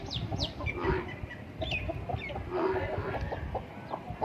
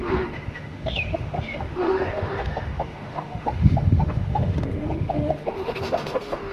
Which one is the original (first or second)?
first